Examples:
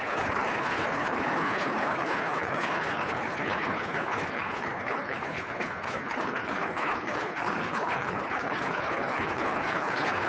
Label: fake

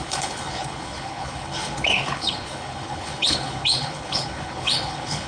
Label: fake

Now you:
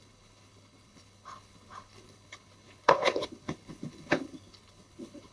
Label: fake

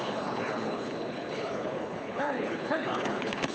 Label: fake